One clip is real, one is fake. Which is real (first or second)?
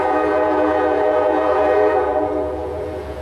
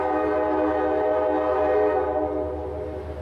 second